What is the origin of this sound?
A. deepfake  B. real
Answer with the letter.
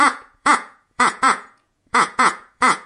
A